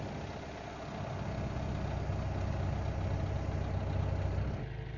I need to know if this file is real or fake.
real